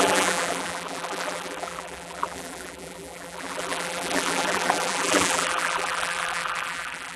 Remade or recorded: remade